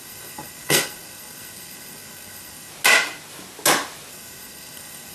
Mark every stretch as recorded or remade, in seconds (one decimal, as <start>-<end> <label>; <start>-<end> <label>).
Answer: 0.0-2.7 remade; 2.7-4.1 recorded; 4.1-5.1 remade